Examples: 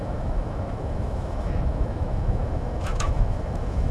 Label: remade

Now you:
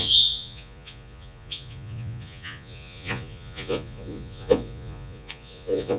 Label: remade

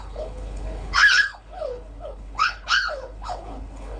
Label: remade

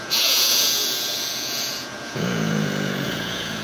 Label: remade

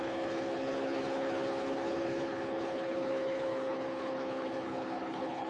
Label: remade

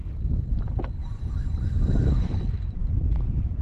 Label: remade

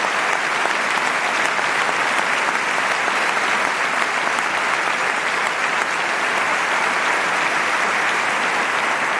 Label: recorded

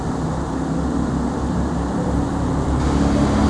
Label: recorded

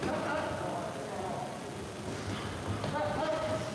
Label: recorded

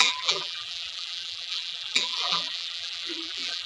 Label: remade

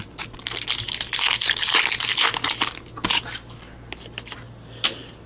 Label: recorded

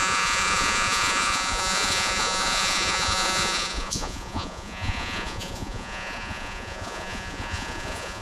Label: remade